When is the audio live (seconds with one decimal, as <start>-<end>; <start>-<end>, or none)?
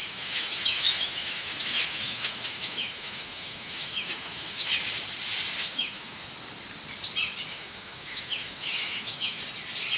4.7-5.6; 6.3-7.5; 9.4-10.0